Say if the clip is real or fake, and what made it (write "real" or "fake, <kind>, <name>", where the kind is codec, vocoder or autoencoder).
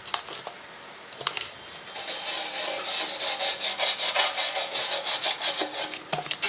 real